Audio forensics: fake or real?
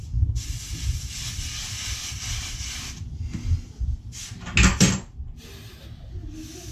real